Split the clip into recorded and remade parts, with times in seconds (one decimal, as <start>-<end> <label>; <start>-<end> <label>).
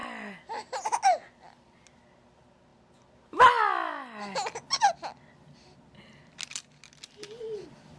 0.0-8.0 recorded